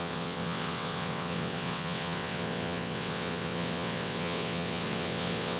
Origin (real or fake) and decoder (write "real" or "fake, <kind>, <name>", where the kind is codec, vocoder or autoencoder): fake, vocoder, WaveNeXt